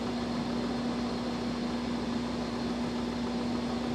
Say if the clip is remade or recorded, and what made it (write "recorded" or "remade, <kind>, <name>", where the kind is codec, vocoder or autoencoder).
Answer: recorded